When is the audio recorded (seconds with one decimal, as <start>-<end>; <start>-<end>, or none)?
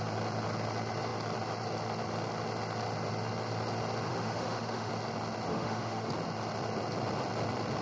0.0-4.1; 4.9-5.5; 6.1-7.8